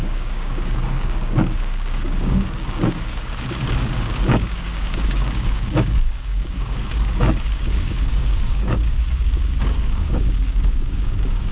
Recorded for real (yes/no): no